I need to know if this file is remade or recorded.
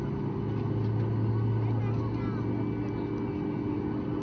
recorded